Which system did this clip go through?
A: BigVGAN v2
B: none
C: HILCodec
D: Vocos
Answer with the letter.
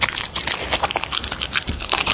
B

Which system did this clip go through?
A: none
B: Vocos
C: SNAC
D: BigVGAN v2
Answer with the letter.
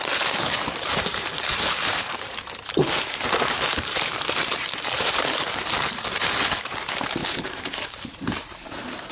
D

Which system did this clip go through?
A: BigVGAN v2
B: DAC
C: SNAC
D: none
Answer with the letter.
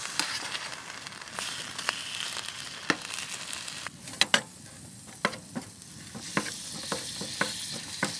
D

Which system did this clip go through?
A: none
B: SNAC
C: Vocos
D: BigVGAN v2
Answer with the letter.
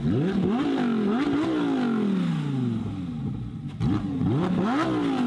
A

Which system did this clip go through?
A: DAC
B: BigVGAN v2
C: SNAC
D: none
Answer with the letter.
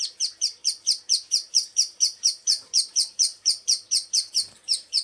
B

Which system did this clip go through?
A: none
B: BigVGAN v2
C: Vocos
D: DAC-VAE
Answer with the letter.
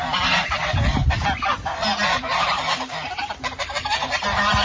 B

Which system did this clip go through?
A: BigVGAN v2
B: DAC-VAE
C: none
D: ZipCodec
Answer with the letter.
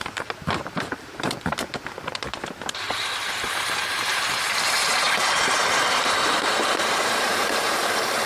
A